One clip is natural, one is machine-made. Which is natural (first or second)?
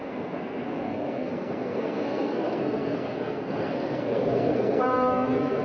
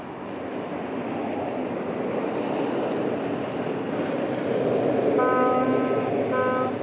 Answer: second